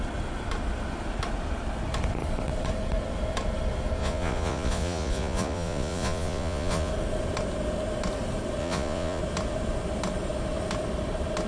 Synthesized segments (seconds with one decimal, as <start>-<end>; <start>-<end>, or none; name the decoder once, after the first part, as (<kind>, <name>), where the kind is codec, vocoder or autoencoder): 4.0-6.9 (vocoder, Vocos); 8.6-9.2